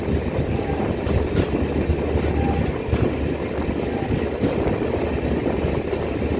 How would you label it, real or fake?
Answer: real